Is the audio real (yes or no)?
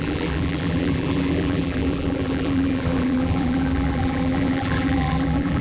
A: no